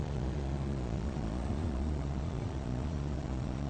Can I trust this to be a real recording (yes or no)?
no